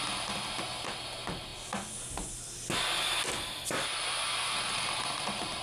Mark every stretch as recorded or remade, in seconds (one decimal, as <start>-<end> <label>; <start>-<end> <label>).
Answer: 0.0-5.6 recorded